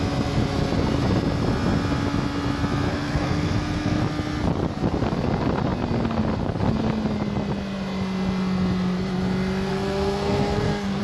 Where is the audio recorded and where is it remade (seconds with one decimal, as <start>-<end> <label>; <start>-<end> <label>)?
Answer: 0.0-2.9 recorded; 2.9-4.0 remade; 4.0-9.7 recorded; 9.7-11.0 remade